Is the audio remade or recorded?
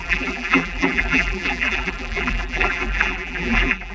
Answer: remade